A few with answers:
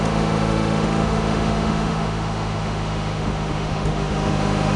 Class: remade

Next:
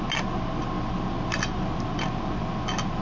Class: recorded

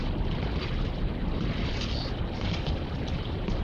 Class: recorded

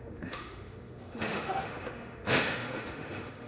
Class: remade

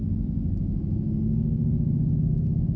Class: remade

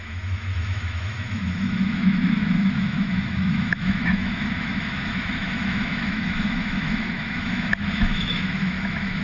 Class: remade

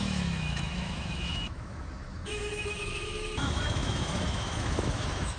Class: remade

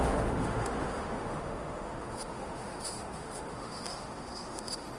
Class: remade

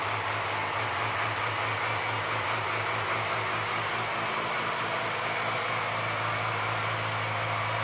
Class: recorded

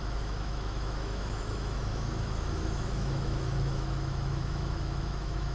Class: remade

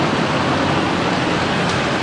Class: recorded